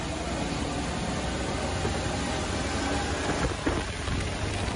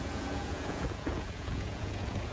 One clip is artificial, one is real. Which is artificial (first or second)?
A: second